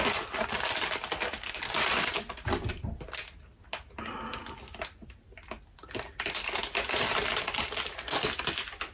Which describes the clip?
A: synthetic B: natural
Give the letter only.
B